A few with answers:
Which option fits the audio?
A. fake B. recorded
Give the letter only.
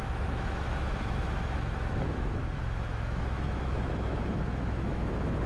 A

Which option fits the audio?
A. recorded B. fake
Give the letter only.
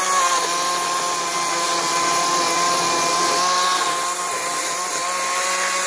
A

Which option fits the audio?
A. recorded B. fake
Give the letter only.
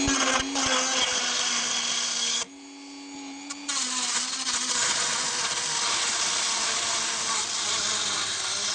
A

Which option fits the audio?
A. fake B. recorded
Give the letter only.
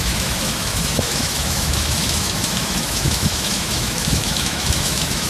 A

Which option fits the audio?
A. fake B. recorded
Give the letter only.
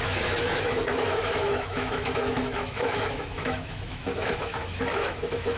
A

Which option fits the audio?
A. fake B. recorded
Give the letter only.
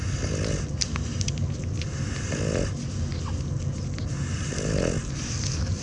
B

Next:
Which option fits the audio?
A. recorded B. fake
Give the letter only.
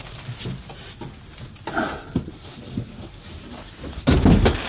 A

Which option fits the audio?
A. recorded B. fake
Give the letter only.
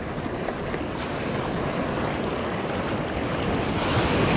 A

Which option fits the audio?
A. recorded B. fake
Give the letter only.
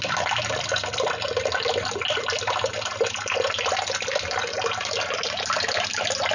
A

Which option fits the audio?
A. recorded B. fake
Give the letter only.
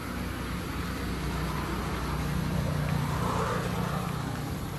A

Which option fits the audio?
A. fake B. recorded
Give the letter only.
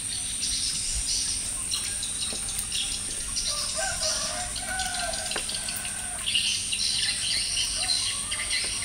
B